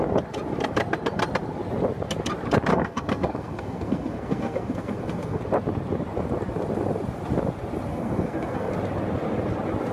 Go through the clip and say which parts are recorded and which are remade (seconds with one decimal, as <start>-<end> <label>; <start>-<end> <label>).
0.0-2.7 recorded; 2.7-5.4 remade; 5.4-7.9 recorded; 7.9-8.7 remade; 8.7-9.9 recorded